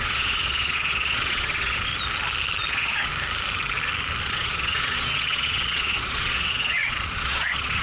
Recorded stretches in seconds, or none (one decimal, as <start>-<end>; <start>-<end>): 1.9-2.7; 3.1-4.2